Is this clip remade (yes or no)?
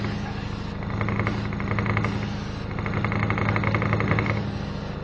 no